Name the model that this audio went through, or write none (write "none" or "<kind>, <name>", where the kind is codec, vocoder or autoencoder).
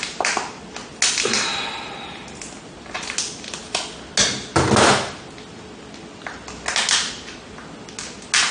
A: none